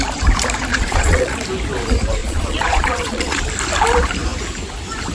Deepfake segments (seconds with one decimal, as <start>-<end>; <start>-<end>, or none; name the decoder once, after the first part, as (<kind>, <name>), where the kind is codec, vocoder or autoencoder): 0.7-1.4 (vocoder, Vocos); 2.2-3.4